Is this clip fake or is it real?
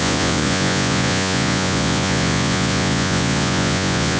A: fake